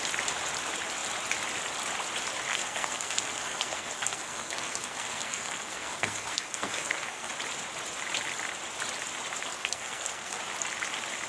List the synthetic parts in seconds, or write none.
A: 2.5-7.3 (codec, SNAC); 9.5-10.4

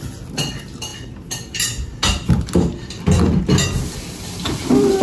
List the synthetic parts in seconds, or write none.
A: none

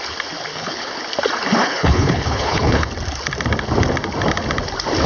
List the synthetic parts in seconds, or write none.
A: 0.5-1.0 (codec, HILCodec); 1.6-2.9

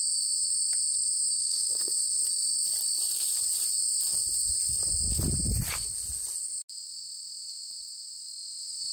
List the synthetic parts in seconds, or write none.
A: 1.4-2.0 (codec, SNAC)